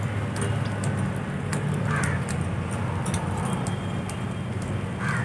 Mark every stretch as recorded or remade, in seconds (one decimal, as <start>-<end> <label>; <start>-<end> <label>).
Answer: 0.0-1.5 recorded; 1.5-2.0 remade; 2.0-5.2 recorded

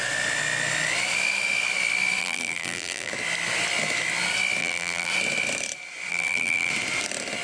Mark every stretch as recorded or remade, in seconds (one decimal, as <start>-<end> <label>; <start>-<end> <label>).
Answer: 0.0-2.2 recorded; 2.2-3.1 remade; 3.1-4.6 recorded; 4.6-5.1 remade; 5.1-6.1 recorded; 6.1-6.7 remade; 6.7-7.4 recorded

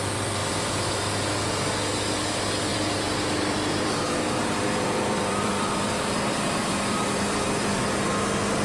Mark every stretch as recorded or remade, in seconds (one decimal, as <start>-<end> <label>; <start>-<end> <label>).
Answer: 0.0-0.4 recorded; 0.4-1.0 remade; 1.0-2.7 recorded; 2.7-7.8 remade; 7.8-8.6 recorded

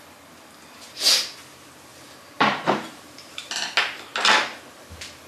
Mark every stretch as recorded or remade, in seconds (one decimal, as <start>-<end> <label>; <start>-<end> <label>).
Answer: 0.0-1.9 recorded; 1.9-3.5 remade; 3.5-5.3 recorded

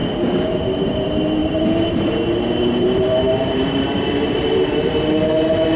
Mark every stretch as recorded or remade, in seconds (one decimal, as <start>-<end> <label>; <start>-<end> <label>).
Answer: 0.0-1.4 recorded; 1.4-4.9 remade; 4.9-5.8 recorded

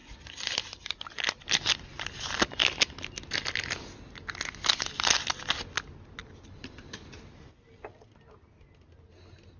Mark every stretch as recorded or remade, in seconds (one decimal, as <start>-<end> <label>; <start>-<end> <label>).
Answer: 0.0-6.2 recorded; 6.2-7.1 remade; 7.1-9.6 recorded

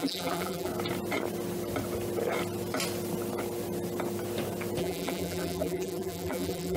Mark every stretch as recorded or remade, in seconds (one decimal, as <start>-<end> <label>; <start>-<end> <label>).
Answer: 0.0-0.7 remade; 0.7-4.8 recorded; 4.8-6.8 remade

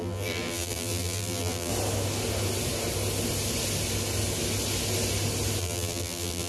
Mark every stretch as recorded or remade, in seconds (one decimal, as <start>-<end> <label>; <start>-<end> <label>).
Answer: 0.0-1.7 remade; 1.7-5.6 recorded; 5.6-6.5 remade